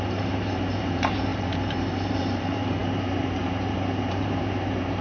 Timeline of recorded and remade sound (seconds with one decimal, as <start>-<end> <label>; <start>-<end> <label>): 0.0-5.0 remade